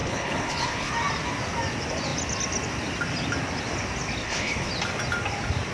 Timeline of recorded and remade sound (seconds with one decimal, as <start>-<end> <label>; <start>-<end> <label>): 0.0-0.9 remade; 0.9-4.2 recorded; 4.2-4.7 remade; 4.7-5.7 recorded